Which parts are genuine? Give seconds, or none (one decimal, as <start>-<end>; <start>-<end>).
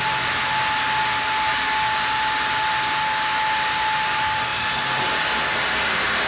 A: 0.0-6.3